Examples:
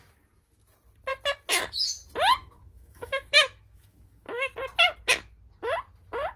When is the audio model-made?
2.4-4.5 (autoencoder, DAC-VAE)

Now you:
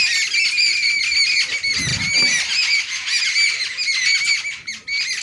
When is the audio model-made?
none

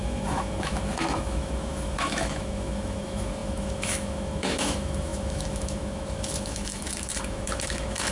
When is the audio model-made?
0.0-8.1 (autoencoder, DAC-VAE)

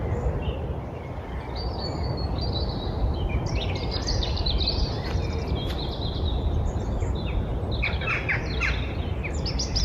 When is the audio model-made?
none

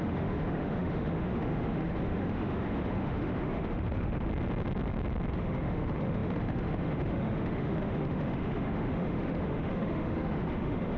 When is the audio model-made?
0.0-4.3 (autoencoder, DAC-VAE); 5.3-11.0

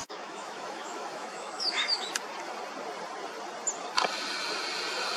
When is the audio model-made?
0.0-2.1 (autoencoder, DAC-VAE)

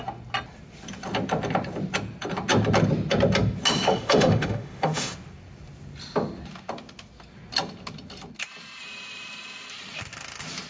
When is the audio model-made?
3.9-5.1 (autoencoder, DAC-VAE)

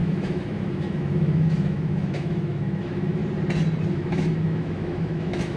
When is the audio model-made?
0.0-3.2 (autoencoder, DAC-VAE); 3.9-5.6